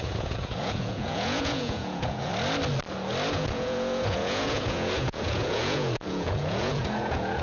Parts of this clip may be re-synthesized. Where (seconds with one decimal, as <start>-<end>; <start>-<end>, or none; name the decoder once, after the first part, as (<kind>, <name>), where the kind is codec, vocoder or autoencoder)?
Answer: 0.0-2.3 (vocoder, Vocos); 3.3-7.4